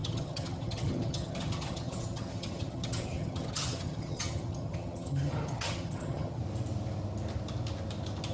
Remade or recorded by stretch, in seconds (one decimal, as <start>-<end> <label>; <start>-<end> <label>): 0.0-6.4 remade; 6.4-8.3 recorded